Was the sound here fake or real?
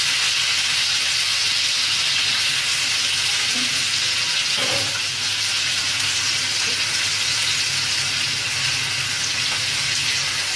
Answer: real